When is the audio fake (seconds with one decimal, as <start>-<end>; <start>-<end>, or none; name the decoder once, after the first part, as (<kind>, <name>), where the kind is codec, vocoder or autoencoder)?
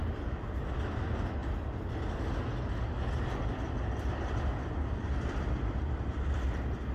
none